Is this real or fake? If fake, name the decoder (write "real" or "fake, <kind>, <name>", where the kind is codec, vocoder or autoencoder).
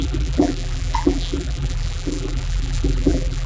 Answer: fake, vocoder, BigVGAN v2